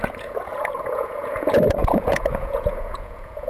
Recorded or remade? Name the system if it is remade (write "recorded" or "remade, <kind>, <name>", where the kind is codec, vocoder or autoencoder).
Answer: remade, vocoder, Vocos